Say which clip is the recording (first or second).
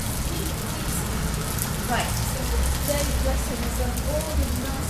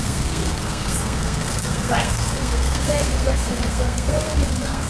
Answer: first